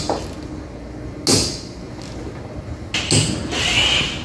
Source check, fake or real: real